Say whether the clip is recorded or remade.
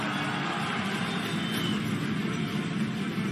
recorded